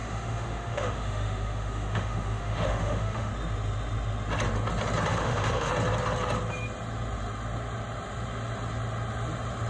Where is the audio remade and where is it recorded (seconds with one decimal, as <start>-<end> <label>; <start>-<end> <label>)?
0.0-3.3 remade; 3.3-5.1 recorded; 5.1-5.7 remade; 5.7-9.7 recorded